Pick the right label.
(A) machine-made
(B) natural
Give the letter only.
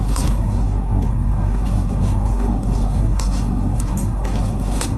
A